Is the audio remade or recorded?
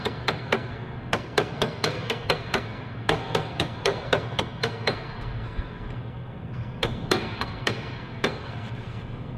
remade